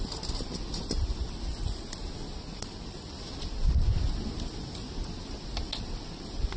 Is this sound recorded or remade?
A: recorded